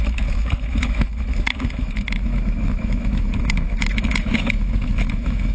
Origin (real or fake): fake